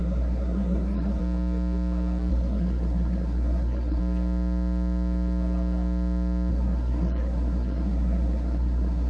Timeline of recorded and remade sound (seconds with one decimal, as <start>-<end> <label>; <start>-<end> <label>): 0.0-1.2 remade; 1.2-2.3 recorded; 2.3-4.0 remade; 4.0-6.5 recorded; 6.5-9.1 remade